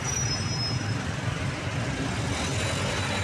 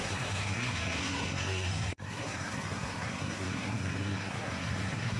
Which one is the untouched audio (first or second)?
first